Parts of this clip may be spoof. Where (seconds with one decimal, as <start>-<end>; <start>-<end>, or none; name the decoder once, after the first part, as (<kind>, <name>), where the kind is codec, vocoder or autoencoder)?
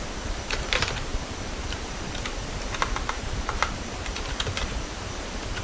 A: 0.0-5.6 (vocoder, BigVGAN v2)